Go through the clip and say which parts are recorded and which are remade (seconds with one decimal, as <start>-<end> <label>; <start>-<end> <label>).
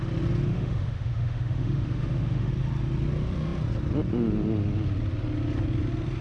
0.0-0.5 recorded; 0.5-2.5 remade; 2.5-6.2 recorded